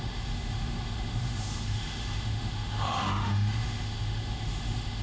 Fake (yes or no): yes